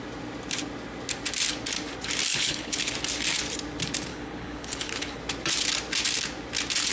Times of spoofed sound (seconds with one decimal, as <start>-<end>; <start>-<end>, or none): 2.3-2.9; 4.1-5.2